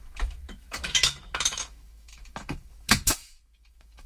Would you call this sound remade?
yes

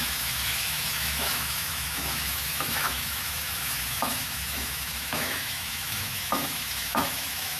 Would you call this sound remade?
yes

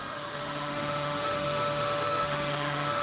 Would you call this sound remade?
yes